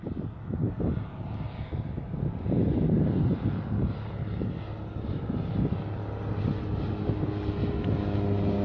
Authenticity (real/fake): real